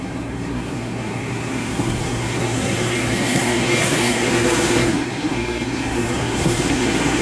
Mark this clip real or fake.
fake